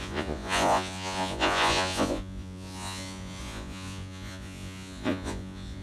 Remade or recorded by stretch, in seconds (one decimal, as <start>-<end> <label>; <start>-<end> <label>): 0.0-5.8 remade